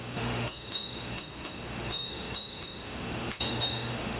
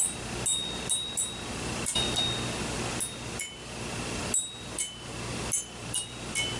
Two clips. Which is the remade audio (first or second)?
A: first